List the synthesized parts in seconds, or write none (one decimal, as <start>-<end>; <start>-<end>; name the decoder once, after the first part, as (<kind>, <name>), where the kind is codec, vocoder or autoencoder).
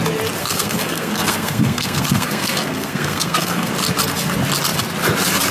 0.4-3.7 (codec, SNAC)